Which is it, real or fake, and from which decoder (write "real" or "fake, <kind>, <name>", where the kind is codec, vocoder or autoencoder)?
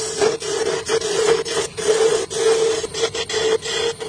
real